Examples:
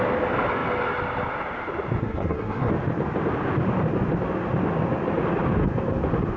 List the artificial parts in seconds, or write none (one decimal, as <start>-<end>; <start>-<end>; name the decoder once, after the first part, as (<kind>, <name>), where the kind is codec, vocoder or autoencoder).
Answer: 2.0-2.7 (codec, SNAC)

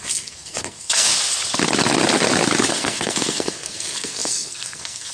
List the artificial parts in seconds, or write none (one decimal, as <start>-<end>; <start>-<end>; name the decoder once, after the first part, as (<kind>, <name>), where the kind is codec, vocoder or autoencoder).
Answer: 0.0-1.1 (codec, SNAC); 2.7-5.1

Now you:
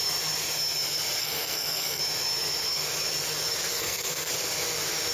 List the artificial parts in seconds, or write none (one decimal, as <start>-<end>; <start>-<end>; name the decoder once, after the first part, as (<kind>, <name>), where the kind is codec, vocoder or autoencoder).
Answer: 1.2-2.0 (codec, SNAC); 3.7-4.3

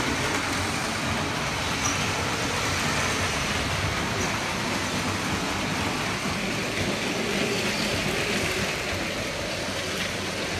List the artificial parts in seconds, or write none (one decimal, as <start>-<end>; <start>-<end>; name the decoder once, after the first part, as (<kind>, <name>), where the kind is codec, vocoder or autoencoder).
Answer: none

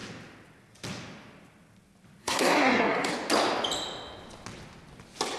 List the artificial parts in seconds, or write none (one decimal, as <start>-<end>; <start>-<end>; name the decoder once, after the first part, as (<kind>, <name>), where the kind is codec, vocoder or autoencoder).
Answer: 2.2-3.1 (codec, SNAC)

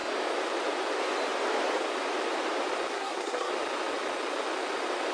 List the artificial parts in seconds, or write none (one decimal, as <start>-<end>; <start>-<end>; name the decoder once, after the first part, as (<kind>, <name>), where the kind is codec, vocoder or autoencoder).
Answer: 2.9-3.5 (codec, SNAC)

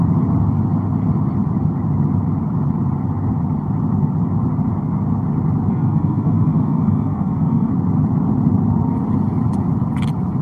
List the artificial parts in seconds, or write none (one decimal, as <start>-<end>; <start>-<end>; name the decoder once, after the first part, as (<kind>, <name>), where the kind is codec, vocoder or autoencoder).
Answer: 5.7-7.7 (codec, SNAC)

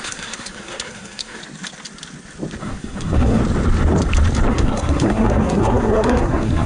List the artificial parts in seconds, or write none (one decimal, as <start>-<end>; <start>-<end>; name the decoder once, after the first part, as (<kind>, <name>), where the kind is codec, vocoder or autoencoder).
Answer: 0.0-1.4 (codec, SNAC); 2.6-3.4; 4.5-6.7